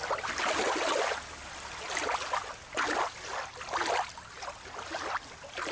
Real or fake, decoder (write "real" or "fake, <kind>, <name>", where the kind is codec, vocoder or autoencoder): real